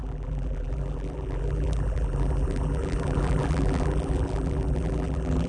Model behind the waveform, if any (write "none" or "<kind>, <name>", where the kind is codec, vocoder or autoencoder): vocoder, BigVGAN v2